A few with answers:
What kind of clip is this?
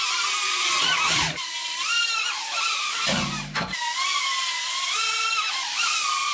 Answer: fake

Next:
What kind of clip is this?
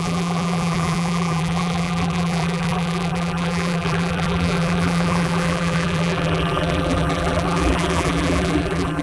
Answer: fake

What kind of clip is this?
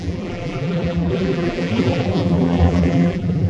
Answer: fake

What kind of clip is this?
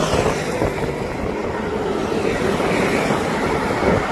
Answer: real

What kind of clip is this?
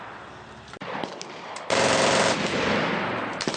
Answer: fake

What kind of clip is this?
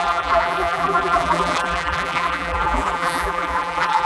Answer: fake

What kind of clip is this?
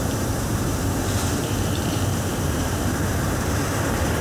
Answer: fake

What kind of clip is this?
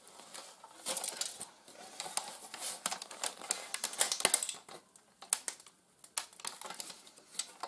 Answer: real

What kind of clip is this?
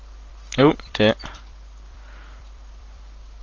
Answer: fake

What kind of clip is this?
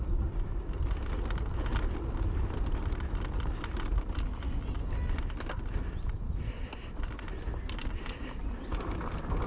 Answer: real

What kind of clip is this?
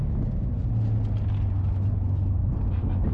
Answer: real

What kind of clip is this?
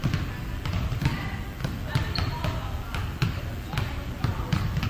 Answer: real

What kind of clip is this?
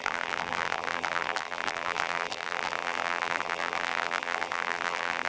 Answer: fake